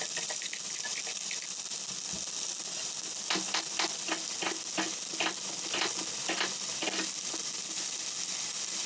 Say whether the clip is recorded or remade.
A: recorded